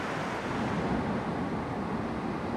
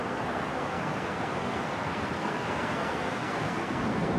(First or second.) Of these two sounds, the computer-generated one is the second